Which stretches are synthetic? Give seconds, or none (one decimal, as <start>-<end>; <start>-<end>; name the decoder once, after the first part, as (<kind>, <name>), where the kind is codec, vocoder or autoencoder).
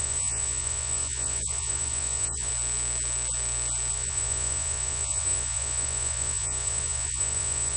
0.0-2.5 (vocoder, Vocos); 3.9-7.8